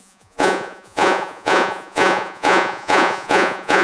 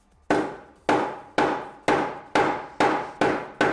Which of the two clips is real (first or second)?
second